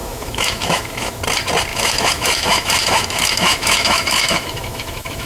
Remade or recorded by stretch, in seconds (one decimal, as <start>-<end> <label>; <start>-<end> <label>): 0.0-1.2 remade; 1.2-1.7 recorded; 1.7-5.3 remade